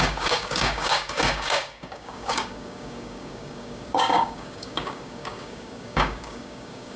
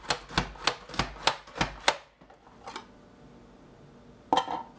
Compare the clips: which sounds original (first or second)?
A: second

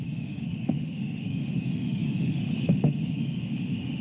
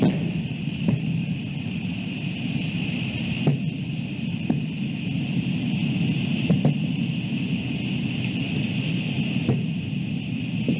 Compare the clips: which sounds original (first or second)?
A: second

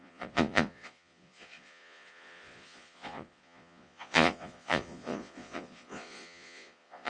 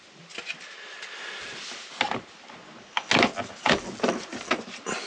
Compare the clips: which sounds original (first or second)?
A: second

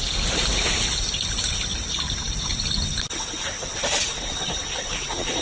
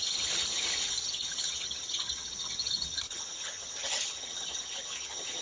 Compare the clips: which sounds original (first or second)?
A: first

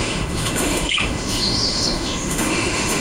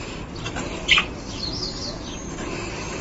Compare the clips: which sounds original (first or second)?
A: second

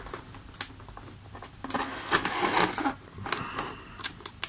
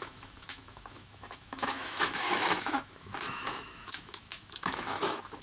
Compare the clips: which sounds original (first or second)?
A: first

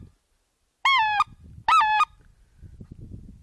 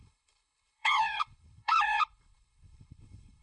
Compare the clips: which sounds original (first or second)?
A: first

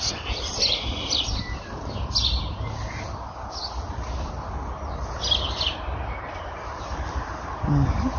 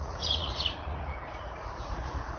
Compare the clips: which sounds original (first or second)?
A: first